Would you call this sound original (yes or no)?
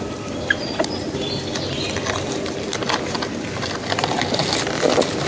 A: yes